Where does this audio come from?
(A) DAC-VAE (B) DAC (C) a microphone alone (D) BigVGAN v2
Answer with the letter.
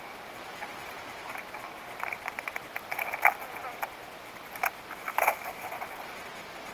C